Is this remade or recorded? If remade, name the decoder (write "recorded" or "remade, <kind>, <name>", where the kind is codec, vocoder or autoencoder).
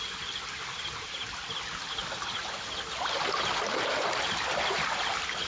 recorded